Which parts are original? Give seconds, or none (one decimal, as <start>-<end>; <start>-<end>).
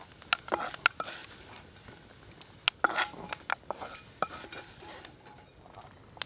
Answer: 0.0-6.3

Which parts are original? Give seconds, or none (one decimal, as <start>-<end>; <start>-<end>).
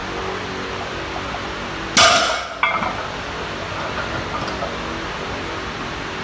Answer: 0.0-6.2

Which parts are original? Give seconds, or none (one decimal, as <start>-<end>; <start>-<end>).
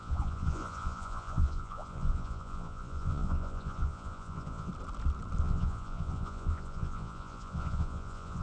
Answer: 4.7-5.4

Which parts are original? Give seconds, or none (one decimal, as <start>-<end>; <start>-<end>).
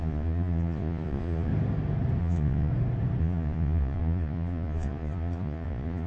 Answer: 1.5-2.2; 2.7-3.2